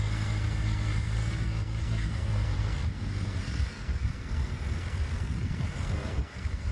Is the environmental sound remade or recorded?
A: remade